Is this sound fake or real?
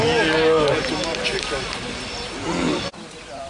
real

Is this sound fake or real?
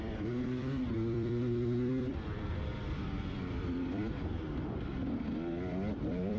fake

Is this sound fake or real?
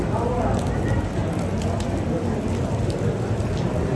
real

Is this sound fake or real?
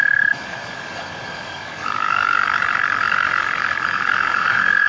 fake